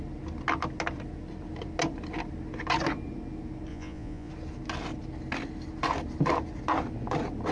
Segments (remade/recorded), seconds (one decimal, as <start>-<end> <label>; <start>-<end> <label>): 0.0-3.7 recorded; 3.7-4.3 remade; 4.3-7.5 recorded